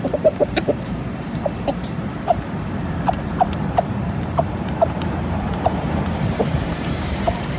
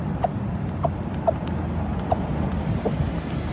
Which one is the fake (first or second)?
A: first